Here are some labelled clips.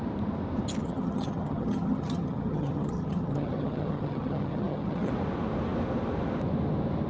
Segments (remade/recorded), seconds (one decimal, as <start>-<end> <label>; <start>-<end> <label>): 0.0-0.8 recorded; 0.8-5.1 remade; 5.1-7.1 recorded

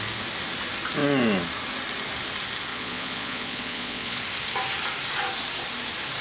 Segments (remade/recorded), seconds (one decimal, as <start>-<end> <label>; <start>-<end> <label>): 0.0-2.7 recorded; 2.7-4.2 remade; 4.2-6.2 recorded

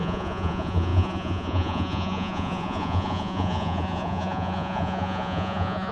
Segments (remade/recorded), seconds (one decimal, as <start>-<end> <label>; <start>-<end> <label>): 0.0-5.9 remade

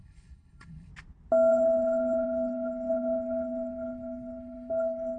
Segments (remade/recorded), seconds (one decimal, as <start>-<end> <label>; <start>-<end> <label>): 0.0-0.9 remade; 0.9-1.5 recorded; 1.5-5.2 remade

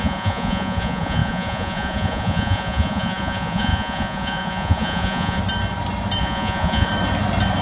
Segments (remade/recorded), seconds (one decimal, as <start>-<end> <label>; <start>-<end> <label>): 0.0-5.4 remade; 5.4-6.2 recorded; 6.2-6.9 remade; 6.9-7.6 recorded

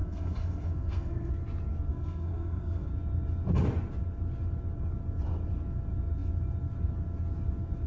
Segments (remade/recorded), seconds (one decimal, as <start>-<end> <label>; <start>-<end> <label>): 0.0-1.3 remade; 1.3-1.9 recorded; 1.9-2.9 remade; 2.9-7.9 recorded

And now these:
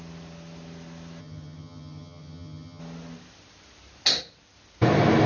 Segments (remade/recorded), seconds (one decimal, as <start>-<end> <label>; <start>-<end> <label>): 0.0-1.2 recorded; 1.2-2.8 remade; 2.8-5.3 recorded

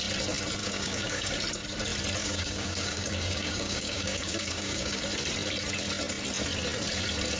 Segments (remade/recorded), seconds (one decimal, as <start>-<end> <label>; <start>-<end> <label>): 0.0-0.6 recorded; 0.6-1.3 remade; 1.3-2.2 recorded; 2.2-5.0 remade; 5.0-7.4 recorded